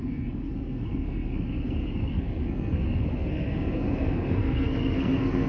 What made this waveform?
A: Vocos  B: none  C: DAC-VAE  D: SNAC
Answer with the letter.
D